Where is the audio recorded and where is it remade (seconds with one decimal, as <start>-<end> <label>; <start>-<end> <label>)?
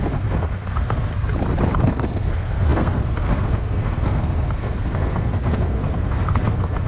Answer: 0.0-1.1 remade; 1.1-1.8 recorded; 1.8-6.9 remade